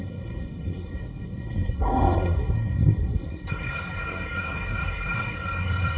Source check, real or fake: fake